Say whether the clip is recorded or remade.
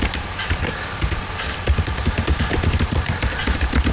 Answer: remade